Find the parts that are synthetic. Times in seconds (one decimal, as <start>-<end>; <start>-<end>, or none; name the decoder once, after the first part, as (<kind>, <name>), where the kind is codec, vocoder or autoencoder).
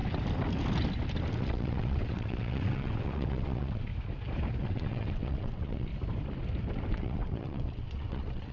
1.4-3.9 (vocoder, WaveNeXt); 4.6-5.9; 6.9-8.5